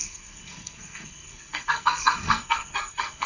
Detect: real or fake fake